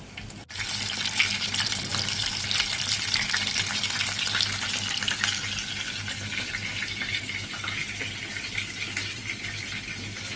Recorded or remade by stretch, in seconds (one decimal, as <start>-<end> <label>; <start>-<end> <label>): 0.0-10.4 recorded